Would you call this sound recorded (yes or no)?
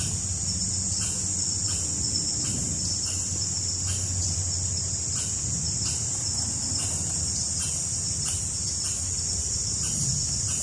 yes